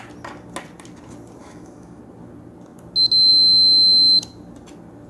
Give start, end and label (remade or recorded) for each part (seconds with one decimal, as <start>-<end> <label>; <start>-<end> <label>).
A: 0.0-1.4 recorded; 1.4-2.0 remade; 2.0-5.1 recorded